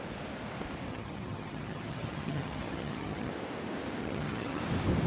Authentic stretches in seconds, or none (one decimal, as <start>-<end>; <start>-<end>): 0.0-0.9; 3.3-4.0; 4.6-5.1